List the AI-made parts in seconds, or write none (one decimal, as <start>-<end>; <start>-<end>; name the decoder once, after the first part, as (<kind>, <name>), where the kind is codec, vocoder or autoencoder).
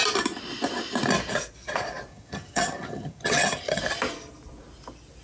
2.1-3.8 (vocoder, HiFi-GAN)